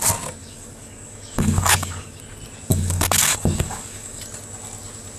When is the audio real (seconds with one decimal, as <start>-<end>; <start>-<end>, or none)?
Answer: 0.0-0.4; 2.2-2.7; 4.2-5.2